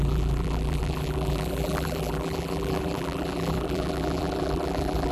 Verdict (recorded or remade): remade